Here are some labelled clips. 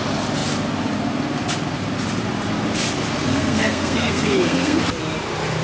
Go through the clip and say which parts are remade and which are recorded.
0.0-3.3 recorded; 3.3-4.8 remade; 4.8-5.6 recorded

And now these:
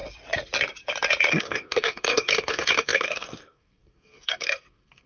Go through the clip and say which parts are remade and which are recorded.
0.0-1.3 recorded; 1.3-5.1 remade

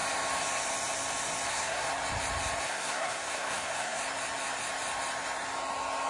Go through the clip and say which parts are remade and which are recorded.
0.0-1.5 recorded; 1.5-1.9 remade; 1.9-2.6 recorded; 2.6-4.0 remade; 4.0-6.1 recorded

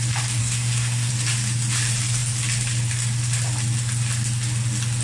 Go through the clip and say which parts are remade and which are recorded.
0.0-0.4 recorded; 0.4-1.1 remade; 1.1-5.0 recorded

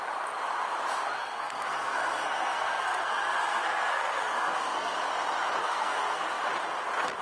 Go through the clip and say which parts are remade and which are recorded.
0.0-1.2 recorded; 1.2-5.0 remade; 5.0-5.6 recorded; 5.6-6.4 remade; 6.4-7.2 recorded

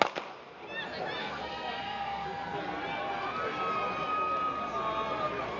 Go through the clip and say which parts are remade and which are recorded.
0.0-1.2 recorded; 1.2-2.6 remade; 2.6-5.6 recorded

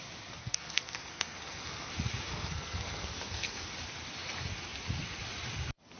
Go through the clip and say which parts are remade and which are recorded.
0.0-0.4 recorded; 0.4-1.9 remade; 1.9-2.3 recorded; 2.3-3.7 remade; 3.7-6.0 recorded